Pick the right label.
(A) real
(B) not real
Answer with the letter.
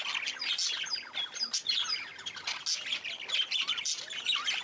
A